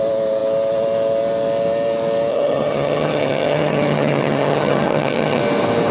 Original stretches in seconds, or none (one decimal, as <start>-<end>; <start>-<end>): 0.0-2.3; 5.4-5.9